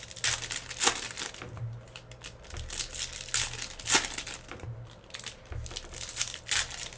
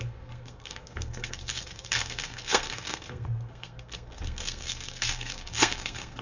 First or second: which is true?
first